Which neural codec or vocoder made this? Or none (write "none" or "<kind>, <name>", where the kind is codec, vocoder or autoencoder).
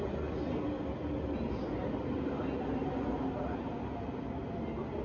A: none